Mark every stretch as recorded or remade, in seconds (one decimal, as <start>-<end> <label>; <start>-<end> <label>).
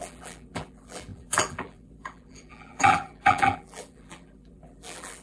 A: 0.0-5.2 remade